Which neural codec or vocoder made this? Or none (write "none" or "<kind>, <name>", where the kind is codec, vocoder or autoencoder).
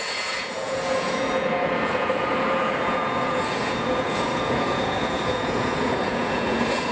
vocoder, Vocos